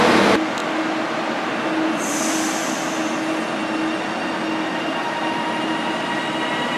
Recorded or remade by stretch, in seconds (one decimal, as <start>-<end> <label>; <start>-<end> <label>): 0.0-6.8 recorded